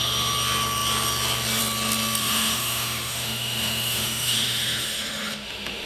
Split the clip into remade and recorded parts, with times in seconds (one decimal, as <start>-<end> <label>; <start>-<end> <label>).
0.0-2.2 recorded; 2.2-5.9 remade